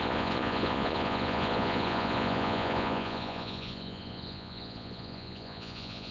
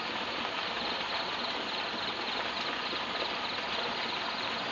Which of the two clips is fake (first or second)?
first